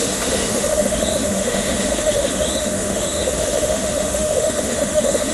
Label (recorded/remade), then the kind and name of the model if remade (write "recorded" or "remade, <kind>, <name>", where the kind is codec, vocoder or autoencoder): remade, autoencoder, DAC-VAE